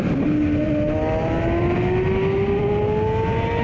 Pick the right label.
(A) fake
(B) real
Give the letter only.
B